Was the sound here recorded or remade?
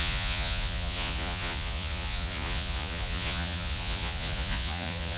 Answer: remade